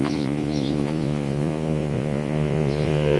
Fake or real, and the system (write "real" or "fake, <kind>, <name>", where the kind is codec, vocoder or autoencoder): fake, vocoder, Vocos